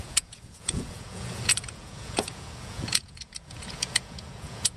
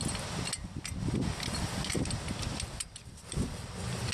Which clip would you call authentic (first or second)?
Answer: second